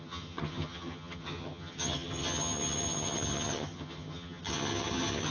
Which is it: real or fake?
fake